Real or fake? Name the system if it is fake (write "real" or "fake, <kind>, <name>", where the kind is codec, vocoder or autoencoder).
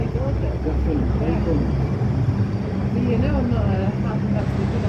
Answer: fake, vocoder, BigVGAN v2